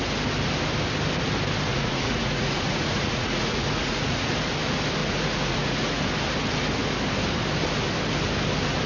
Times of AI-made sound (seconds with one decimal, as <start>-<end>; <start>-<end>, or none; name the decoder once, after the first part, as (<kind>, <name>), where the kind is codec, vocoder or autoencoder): 1.7-4.3 (vocoder, Vocos); 5.0-6.0